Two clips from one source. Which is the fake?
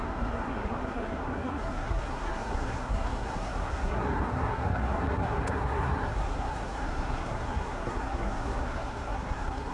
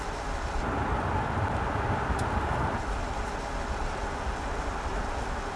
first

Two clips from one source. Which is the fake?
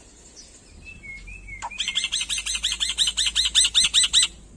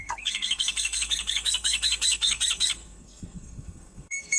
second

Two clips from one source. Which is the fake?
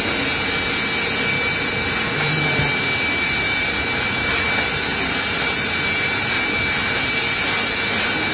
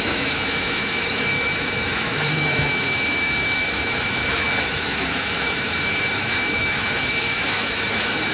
second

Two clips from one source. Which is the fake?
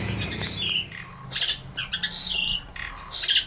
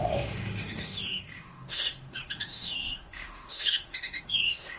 second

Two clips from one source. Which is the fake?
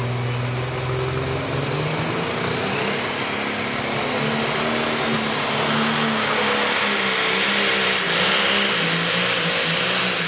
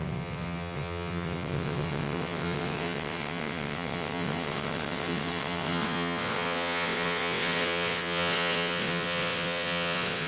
second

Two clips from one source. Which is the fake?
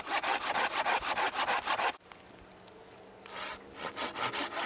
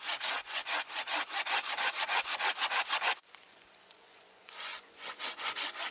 second